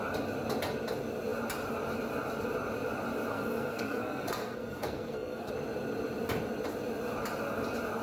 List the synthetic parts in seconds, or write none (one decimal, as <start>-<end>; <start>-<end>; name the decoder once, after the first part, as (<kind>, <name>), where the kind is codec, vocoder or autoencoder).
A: 3.3-5.5 (codec, SNAC)